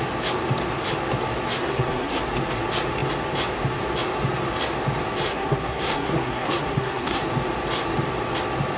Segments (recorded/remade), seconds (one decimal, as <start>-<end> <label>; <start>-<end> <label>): 0.0-1.6 recorded; 1.6-2.2 remade; 2.2-5.3 recorded; 5.3-7.2 remade; 7.2-8.8 recorded